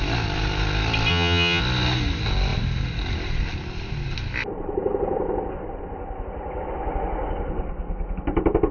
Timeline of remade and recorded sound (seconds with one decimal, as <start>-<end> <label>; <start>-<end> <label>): 0.0-1.1 recorded; 1.1-1.6 remade; 1.6-8.7 recorded